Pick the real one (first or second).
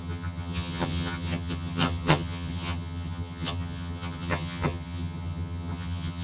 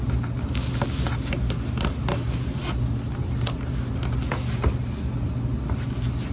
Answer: second